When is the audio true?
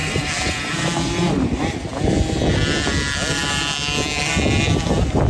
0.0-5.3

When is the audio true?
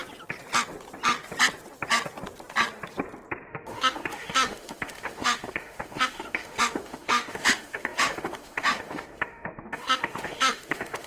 0.0-3.5